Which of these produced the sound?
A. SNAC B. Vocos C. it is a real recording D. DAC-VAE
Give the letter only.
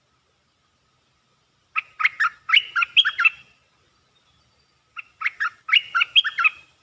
C